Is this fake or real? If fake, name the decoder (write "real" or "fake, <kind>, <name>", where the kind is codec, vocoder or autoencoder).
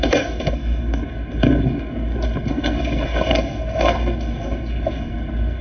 fake, codec, SNAC